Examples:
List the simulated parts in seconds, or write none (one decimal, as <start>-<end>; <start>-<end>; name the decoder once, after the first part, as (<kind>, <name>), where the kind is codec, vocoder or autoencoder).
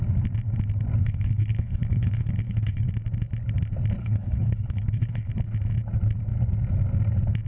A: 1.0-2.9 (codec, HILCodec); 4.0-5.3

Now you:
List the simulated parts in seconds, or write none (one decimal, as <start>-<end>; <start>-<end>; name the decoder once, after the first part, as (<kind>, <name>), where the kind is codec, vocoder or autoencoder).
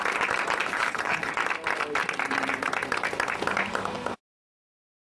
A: 0.7-1.3 (codec, HILCodec)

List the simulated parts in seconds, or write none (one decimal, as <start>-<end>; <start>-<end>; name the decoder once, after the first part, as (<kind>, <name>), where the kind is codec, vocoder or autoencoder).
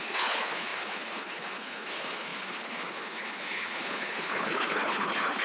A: 0.0-5.4 (codec, HILCodec)